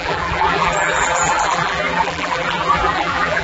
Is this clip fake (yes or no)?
yes